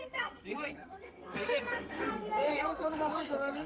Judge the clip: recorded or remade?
remade